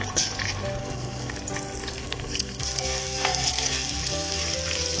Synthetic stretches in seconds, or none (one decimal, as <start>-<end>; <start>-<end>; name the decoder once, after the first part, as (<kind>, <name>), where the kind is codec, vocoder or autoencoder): 0.8-1.3 (codec, SNAC); 1.9-4.4